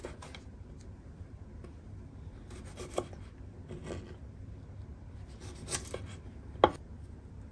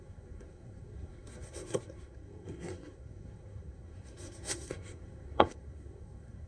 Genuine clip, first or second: first